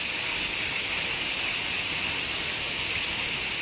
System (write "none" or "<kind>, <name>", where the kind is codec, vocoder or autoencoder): none